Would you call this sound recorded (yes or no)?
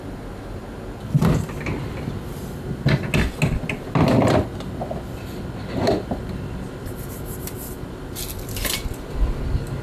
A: yes